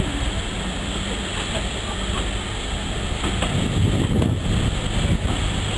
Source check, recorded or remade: recorded